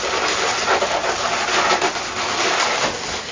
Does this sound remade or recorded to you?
recorded